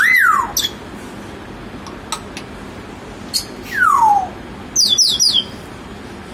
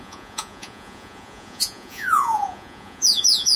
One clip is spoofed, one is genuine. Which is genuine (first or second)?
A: first